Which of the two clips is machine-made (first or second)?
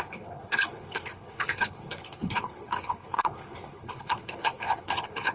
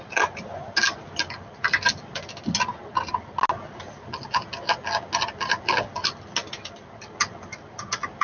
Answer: first